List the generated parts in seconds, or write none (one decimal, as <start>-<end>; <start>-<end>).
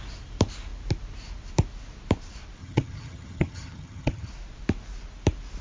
2.6-4.3